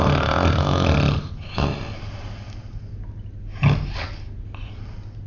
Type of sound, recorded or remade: recorded